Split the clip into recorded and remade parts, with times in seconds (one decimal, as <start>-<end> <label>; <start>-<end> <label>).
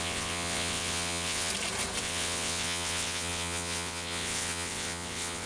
0.0-1.5 remade; 1.5-2.0 recorded; 2.0-5.5 remade